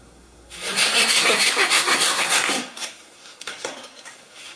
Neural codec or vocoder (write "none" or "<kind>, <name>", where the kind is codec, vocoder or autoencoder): codec, SNAC